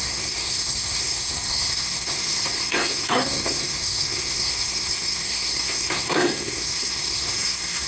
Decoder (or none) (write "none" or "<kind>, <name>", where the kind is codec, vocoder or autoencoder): codec, SNAC